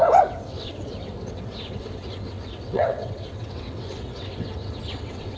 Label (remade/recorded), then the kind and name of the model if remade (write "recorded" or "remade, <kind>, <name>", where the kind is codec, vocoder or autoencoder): remade, vocoder, WaveNeXt